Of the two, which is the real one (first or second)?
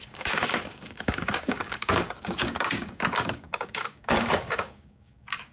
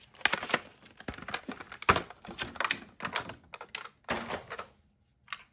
second